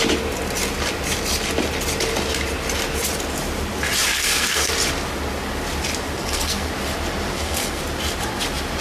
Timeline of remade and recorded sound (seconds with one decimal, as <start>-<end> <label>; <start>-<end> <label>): 0.0-4.1 recorded; 4.1-4.7 remade; 4.7-6.2 recorded; 6.2-6.7 remade; 6.7-7.3 recorded; 7.3-7.8 remade; 7.8-8.8 recorded